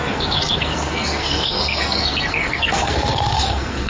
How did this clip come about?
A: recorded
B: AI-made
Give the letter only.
B